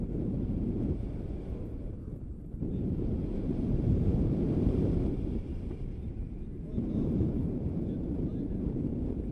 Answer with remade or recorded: remade